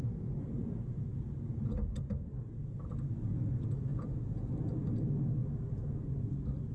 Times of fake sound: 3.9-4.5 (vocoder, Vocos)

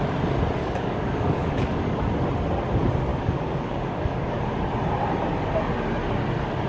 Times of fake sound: 0.6-2.0 (codec, DAC); 3.1-4.4

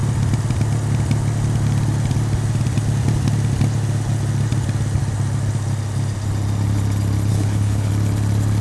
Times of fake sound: 7.3-7.9 (codec, HILCodec)

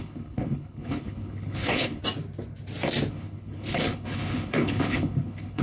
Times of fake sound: 0.0-2.0 (codec, HILCodec); 3.1-5.6

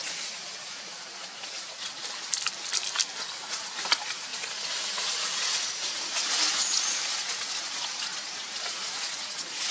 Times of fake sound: 0.0-2.0 (vocoder, Vocos); 3.3-9.7

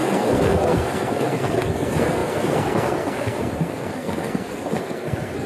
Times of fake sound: 0.0-5.5 (codec, SNAC)